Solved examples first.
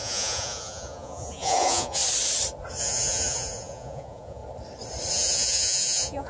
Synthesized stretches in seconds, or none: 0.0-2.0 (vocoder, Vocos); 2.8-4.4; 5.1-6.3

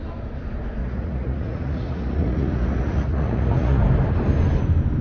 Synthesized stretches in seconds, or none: 0.8-3.8 (vocoder, Vocos)